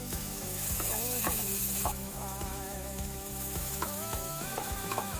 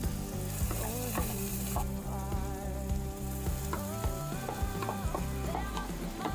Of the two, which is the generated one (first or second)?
first